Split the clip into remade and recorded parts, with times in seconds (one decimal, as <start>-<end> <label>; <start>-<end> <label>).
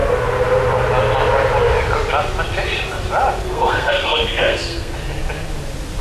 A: 0.0-3.4 recorded; 3.4-4.9 remade; 4.9-6.0 recorded